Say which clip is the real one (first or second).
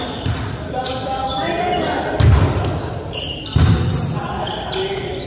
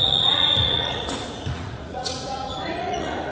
first